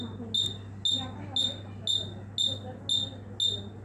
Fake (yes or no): no